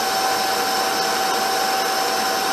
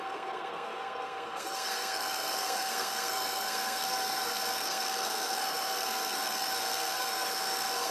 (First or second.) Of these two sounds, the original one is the first